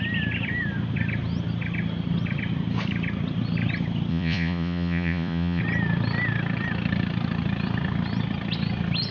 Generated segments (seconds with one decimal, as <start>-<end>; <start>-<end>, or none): 4.1-5.6